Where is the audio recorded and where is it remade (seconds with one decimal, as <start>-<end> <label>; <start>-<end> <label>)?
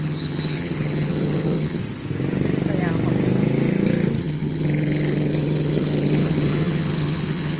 0.0-1.8 remade; 1.8-4.2 recorded; 4.2-7.6 remade